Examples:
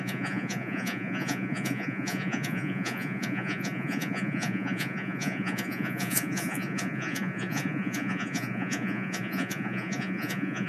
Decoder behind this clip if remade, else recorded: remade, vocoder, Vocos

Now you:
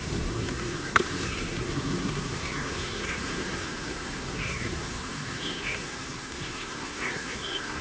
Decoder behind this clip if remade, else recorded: remade, codec, SNAC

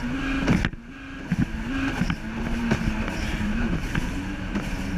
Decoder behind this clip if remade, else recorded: recorded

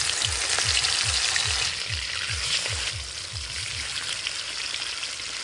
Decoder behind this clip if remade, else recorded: recorded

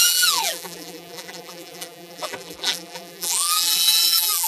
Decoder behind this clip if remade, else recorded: remade, vocoder, BigVGAN v2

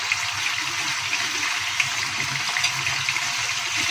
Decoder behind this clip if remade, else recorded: recorded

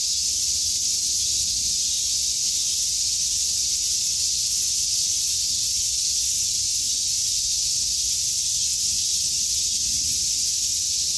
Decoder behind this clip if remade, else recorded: remade, vocoder, Vocos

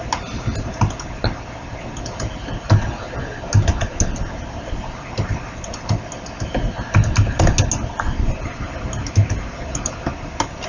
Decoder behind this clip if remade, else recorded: recorded